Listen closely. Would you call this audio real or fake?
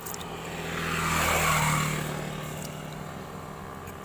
real